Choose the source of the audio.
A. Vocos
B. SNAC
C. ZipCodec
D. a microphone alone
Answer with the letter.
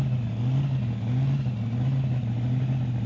D